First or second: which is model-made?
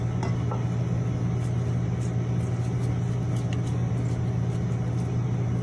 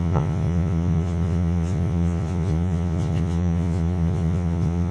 second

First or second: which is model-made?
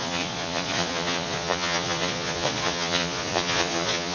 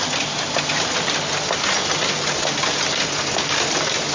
first